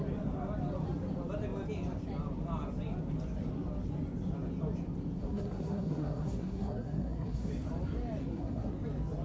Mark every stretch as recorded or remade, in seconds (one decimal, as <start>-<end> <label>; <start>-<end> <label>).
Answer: 0.0-5.2 recorded; 5.2-7.5 remade; 7.5-8.2 recorded; 8.2-8.7 remade; 8.7-9.2 recorded

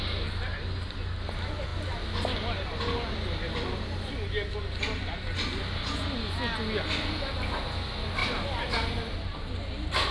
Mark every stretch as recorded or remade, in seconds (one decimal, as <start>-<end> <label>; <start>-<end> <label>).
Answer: 0.0-10.1 recorded

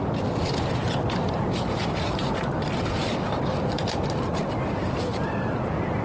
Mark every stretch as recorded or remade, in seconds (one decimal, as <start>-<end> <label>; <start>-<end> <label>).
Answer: 0.0-6.0 remade

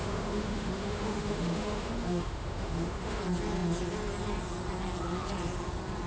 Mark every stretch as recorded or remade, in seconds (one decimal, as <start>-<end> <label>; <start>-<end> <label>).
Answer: 0.0-3.2 remade; 3.2-6.1 recorded